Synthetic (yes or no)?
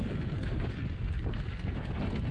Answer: yes